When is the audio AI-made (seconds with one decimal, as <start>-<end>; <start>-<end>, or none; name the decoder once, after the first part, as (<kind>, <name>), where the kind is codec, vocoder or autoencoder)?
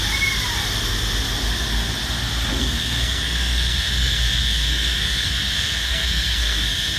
2.5-7.0 (codec, SNAC)